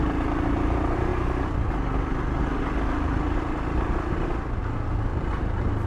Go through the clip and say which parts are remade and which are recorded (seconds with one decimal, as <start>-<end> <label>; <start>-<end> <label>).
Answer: 0.0-5.1 recorded; 5.1-5.9 remade